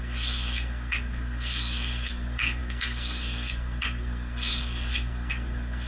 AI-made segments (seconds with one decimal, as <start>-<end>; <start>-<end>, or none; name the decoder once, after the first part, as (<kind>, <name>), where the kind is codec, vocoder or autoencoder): 0.0-5.9 (codec, SNAC)

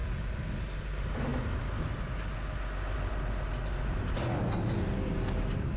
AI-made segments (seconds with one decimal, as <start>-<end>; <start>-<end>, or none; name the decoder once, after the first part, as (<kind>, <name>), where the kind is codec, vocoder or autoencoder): none

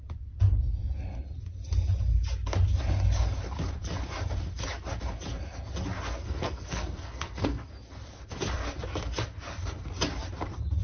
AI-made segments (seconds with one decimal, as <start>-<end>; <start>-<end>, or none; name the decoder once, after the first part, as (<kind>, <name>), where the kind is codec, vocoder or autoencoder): 6.2-7.7 (codec, SNAC)

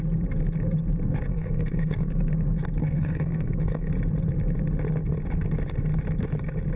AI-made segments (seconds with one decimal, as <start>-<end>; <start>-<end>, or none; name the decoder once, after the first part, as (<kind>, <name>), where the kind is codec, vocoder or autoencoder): 1.3-2.3 (codec, SNAC); 2.8-3.9

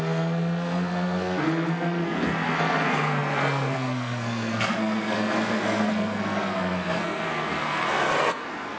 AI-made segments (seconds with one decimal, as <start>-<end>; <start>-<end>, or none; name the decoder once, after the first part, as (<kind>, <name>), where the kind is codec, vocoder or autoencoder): 0.0-8.8 (codec, SNAC)